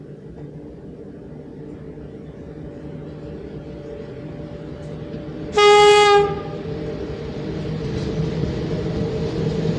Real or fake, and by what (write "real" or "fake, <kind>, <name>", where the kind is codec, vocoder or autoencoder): real